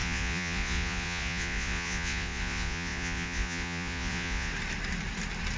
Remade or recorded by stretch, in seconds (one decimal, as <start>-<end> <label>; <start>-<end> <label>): 0.0-4.5 remade; 4.5-5.6 recorded